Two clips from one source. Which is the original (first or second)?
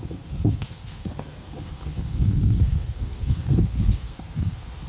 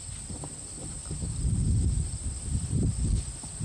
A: second